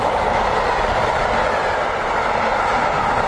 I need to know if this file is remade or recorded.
recorded